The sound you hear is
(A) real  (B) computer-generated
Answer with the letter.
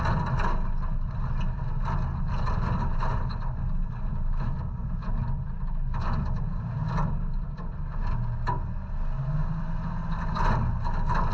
A